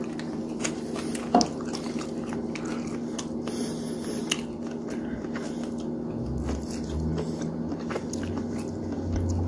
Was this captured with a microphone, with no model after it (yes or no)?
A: yes